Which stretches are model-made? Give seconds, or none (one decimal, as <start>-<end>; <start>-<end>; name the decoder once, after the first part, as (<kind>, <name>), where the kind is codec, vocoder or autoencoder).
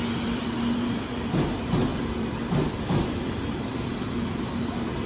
0.0-1.3 (vocoder, BigVGAN v2); 1.9-5.1